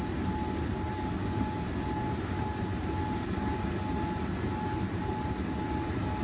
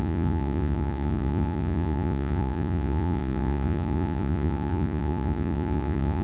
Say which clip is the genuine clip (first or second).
first